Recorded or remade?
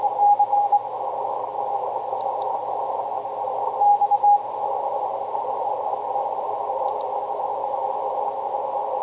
recorded